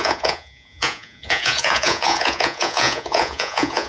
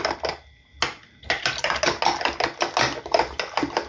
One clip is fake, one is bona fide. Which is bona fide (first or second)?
second